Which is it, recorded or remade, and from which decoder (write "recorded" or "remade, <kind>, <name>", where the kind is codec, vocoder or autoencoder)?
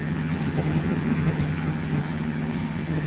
remade, vocoder, HiFi-GAN